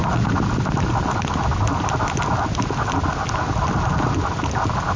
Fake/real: real